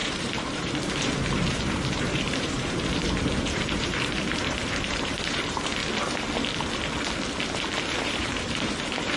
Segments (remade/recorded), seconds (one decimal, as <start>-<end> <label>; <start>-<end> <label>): 0.0-5.8 remade; 5.8-7.9 recorded; 7.9-9.2 remade